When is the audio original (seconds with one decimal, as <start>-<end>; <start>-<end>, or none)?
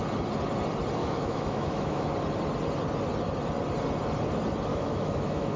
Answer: 0.0-1.0; 2.1-4.7